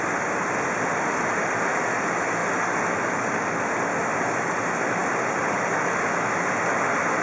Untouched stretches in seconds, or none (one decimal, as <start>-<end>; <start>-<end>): 0.0-7.2